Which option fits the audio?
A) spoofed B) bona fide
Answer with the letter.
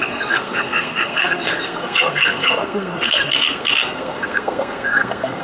A